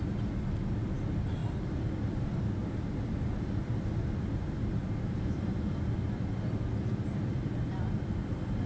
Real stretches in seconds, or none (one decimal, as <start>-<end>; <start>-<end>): 0.0-1.4; 4.3-4.8